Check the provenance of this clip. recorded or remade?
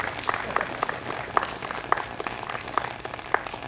recorded